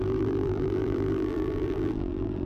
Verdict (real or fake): fake